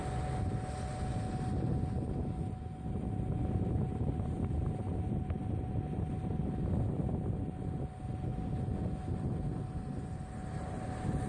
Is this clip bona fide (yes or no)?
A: yes